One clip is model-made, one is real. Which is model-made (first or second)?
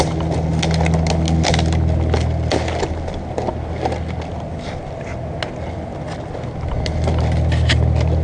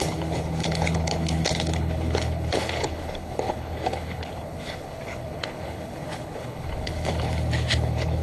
second